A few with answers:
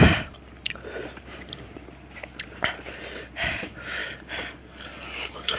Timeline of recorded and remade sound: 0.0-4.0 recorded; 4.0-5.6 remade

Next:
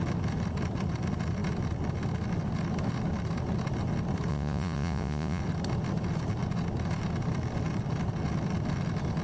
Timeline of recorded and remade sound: 0.0-4.3 recorded; 4.3-5.4 remade; 5.4-9.2 recorded

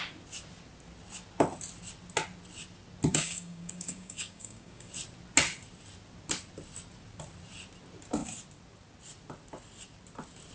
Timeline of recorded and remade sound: 0.0-3.1 recorded; 3.1-4.9 remade; 4.9-10.5 recorded

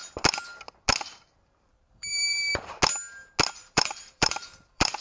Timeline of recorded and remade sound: 0.0-1.5 recorded; 1.5-2.5 remade; 2.5-3.5 recorded; 3.5-5.0 remade

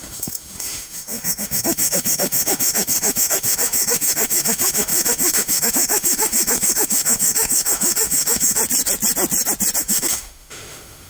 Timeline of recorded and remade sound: 0.0-8.6 remade; 8.6-9.8 recorded; 9.8-11.1 remade

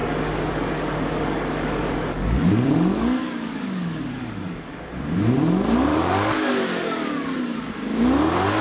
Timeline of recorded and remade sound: 0.0-4.8 remade; 4.8-5.9 recorded; 5.9-7.7 remade; 7.7-8.6 recorded

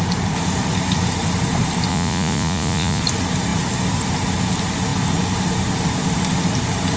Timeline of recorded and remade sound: 0.0-1.9 recorded; 1.9-3.0 remade; 3.0-7.0 recorded